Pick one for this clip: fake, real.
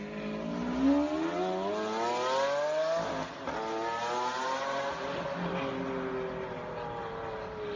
real